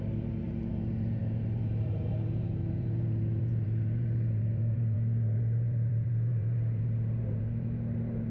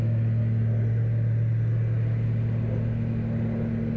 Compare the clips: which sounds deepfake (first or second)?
first